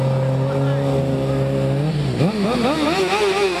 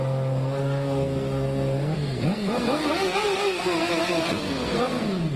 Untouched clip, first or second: first